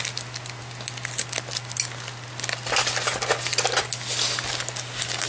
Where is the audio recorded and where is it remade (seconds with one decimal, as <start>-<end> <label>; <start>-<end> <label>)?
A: 0.0-5.3 recorded